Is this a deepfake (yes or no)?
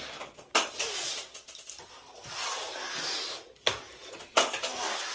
no